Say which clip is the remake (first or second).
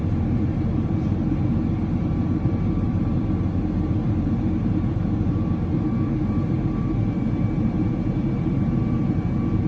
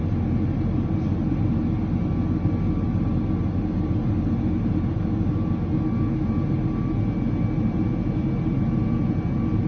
first